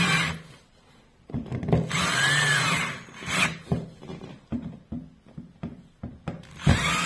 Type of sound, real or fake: real